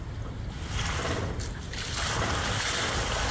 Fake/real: real